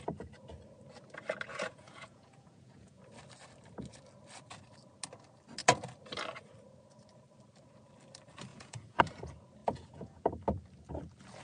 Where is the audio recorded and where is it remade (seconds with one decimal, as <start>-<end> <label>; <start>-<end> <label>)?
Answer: 0.0-1.5 recorded; 1.5-3.0 remade; 3.0-8.5 recorded; 8.5-9.0 remade; 9.0-9.6 recorded; 9.6-10.2 remade; 10.2-11.4 recorded